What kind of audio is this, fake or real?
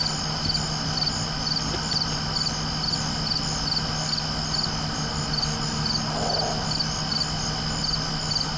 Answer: real